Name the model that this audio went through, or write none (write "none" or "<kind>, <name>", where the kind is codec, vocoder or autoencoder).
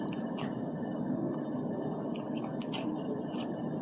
none